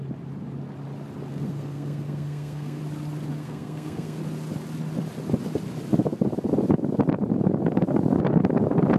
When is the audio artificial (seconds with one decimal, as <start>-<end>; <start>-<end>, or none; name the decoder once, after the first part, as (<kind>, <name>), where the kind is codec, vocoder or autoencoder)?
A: 1.3-2.8 (codec, SNAC); 3.3-4.2

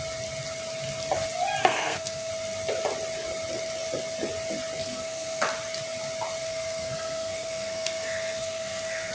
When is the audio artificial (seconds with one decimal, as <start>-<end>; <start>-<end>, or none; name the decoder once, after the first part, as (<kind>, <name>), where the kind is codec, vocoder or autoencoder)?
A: 1.6-2.3 (codec, SNAC); 4.8-5.4; 6.4-9.1

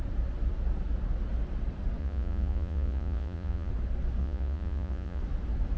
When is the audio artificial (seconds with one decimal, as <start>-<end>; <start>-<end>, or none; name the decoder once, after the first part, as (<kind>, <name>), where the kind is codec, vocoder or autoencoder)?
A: 2.0-3.7 (vocoder, Vocos); 4.2-5.2

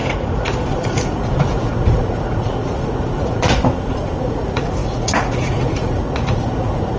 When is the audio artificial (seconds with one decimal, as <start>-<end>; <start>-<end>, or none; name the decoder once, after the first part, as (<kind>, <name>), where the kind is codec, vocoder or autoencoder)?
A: 0.0-3.6 (vocoder, Vocos); 4.2-7.0